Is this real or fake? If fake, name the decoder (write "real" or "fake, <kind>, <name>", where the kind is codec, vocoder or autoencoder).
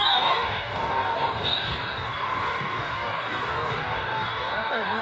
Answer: fake, codec, DAC